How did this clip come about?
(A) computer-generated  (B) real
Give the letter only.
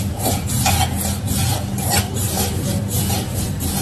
B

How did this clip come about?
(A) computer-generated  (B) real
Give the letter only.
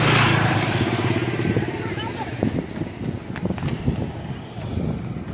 B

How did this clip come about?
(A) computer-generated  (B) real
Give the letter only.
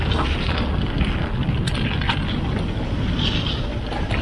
B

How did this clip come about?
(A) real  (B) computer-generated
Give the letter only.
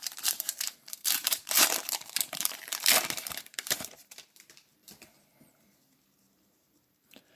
B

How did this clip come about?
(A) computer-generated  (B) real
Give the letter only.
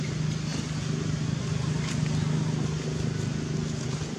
B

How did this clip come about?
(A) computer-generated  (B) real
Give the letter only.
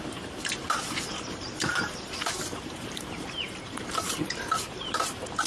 A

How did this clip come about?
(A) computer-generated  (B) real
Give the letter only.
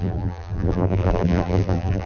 A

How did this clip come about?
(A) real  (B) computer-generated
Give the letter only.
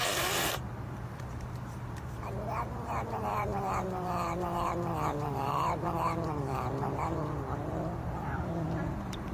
B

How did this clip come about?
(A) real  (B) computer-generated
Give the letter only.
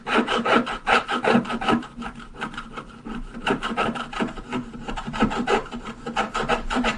B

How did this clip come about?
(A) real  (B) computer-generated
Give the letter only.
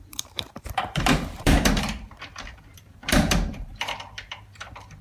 B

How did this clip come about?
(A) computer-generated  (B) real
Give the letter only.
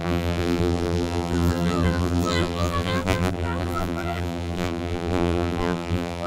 A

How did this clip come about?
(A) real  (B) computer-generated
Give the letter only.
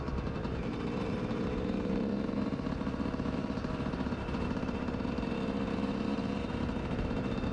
B